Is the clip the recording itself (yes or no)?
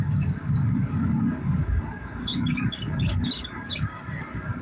no